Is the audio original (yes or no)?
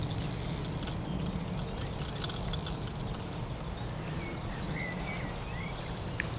yes